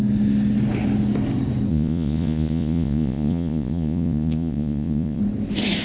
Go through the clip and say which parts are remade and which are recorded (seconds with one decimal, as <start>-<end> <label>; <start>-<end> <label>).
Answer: 0.0-1.7 recorded; 1.7-5.2 remade; 5.2-5.8 recorded